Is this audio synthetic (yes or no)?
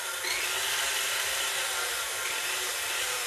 no